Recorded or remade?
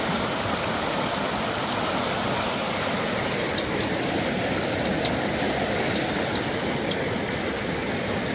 recorded